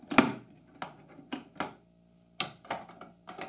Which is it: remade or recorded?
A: recorded